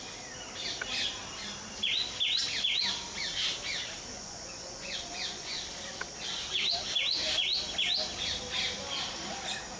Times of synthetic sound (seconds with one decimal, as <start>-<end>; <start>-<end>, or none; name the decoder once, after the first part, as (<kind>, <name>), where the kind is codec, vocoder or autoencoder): 4.1-5.6 (vocoder, Vocos)